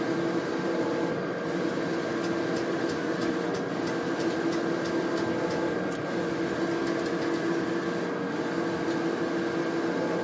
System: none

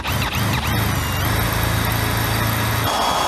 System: none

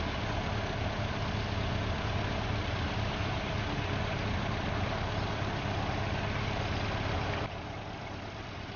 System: vocoder, BigVGAN v2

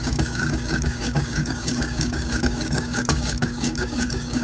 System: codec, DAC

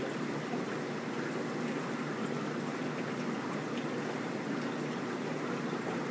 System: none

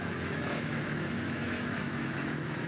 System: autoencoder, DAC-VAE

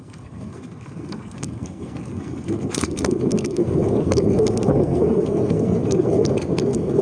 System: codec, SNAC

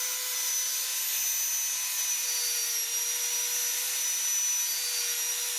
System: none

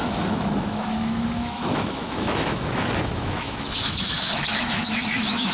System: autoencoder, DAC-VAE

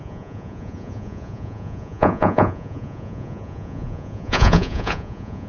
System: vocoder, Vocos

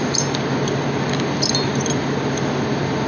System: none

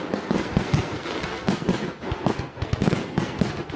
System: codec, SNAC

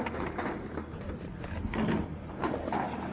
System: none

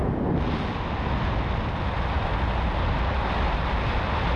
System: none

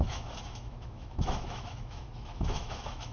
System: autoencoder, DAC-VAE